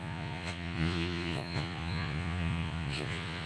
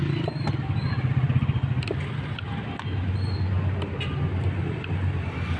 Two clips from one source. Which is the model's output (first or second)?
first